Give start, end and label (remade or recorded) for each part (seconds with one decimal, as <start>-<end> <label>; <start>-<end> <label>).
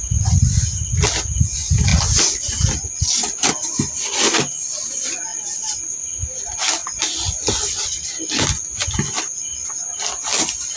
0.0-10.8 recorded